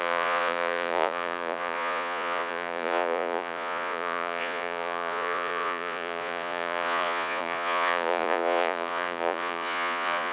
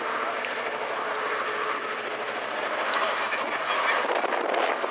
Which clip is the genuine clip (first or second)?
second